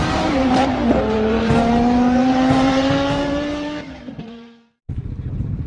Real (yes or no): no